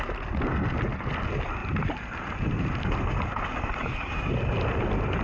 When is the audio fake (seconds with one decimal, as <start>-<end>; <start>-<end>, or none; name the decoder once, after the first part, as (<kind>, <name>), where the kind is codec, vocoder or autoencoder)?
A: 3.8-4.3 (codec, DAC)